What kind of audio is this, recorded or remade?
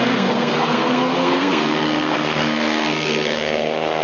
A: remade